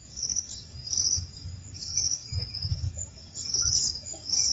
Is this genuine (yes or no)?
no